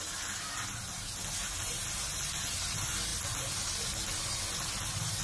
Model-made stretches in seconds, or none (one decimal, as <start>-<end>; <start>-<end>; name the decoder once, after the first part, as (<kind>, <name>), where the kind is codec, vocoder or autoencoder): none